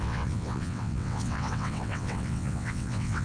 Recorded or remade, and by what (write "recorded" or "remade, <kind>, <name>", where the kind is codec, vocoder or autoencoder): remade, vocoder, WaveNeXt